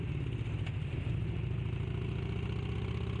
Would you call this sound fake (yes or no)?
no